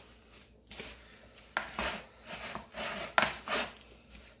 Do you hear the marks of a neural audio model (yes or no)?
no